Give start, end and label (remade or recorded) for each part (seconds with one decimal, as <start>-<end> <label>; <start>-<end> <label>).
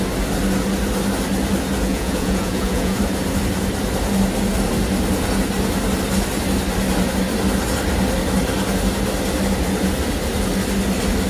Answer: 0.0-1.9 recorded; 1.9-3.0 remade; 3.0-11.3 recorded